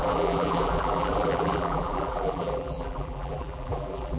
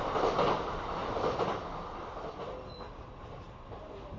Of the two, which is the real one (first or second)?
second